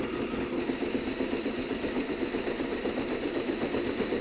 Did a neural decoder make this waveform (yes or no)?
no